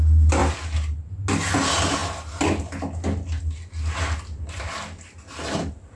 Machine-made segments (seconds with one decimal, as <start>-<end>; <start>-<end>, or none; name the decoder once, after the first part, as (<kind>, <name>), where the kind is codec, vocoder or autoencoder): none